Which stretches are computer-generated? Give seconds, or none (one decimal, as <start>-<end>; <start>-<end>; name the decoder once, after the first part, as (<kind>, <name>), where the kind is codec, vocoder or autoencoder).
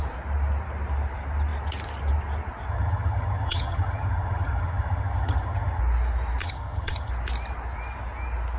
2.7-5.8 (vocoder, HiFi-GAN); 6.4-7.1